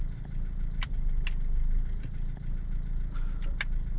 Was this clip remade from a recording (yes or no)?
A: no